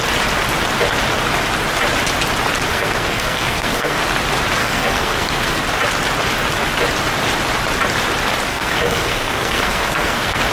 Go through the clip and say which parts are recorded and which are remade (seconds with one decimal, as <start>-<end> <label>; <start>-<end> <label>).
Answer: 0.0-2.7 recorded; 2.7-4.0 remade; 4.0-4.6 recorded; 4.6-5.6 remade; 5.6-8.5 recorded; 8.5-10.5 remade